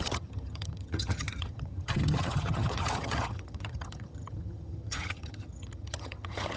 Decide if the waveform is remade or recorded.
remade